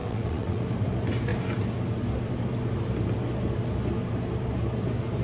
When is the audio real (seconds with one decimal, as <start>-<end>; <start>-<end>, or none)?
0.6-5.2